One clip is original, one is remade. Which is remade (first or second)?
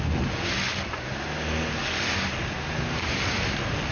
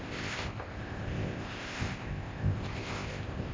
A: second